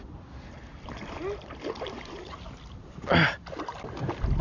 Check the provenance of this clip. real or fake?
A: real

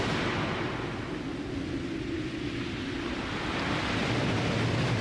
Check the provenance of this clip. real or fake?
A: real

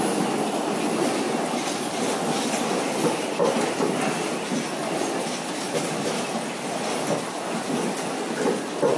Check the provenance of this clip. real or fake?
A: real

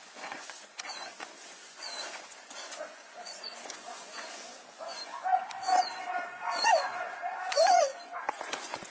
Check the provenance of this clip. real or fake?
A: fake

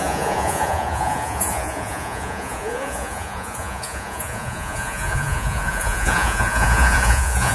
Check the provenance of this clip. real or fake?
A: fake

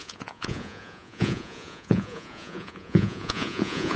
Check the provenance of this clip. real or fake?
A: fake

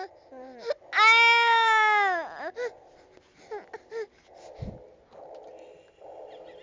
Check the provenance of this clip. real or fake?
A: real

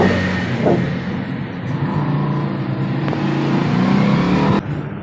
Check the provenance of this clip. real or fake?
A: real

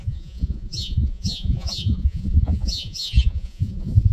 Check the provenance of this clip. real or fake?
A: fake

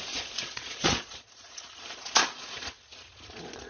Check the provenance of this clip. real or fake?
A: fake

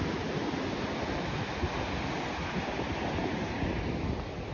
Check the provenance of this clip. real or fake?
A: real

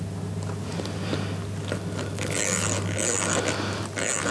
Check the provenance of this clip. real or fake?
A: real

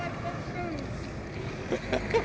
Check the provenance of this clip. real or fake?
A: real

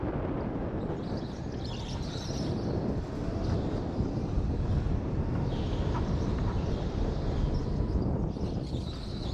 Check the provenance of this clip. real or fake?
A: real